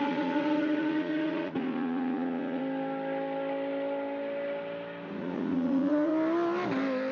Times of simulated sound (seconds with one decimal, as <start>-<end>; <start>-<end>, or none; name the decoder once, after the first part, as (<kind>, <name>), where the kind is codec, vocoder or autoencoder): 0.0-2.6 (vocoder, Vocos); 5.2-6.1